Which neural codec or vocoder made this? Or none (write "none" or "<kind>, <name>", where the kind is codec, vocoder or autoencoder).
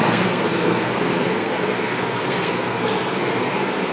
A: codec, SNAC